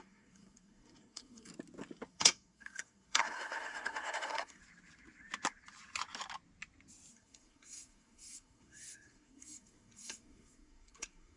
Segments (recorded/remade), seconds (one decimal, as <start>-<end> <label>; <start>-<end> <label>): 0.0-1.5 remade; 1.5-2.1 recorded; 2.1-4.6 remade; 4.6-7.1 recorded; 7.1-11.4 remade